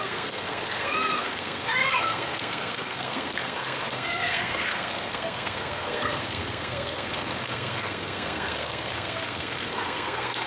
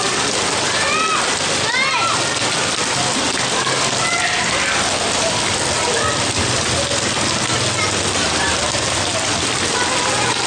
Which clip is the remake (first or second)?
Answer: first